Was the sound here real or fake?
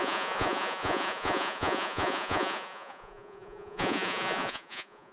fake